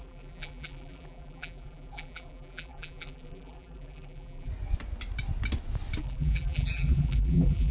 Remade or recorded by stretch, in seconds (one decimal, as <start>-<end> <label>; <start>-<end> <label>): 0.0-4.5 remade; 4.5-6.0 recorded; 6.0-7.7 remade